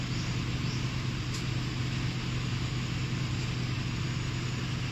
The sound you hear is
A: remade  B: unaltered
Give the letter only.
B